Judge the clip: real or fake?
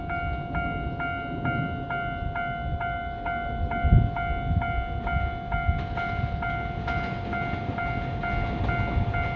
real